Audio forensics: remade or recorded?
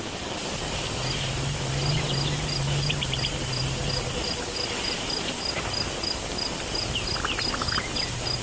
recorded